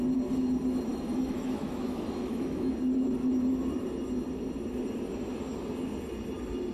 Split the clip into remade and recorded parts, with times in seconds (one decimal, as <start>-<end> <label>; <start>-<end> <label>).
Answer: 0.0-0.9 recorded; 0.9-2.7 remade; 2.7-6.7 recorded